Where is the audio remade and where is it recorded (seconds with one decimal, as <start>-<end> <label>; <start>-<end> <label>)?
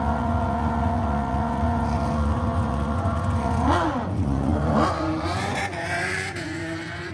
0.0-7.1 remade